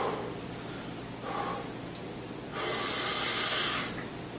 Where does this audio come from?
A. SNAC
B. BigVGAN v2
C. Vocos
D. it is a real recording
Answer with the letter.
D